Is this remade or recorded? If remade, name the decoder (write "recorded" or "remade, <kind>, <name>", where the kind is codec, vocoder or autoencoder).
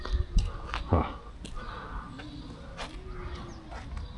recorded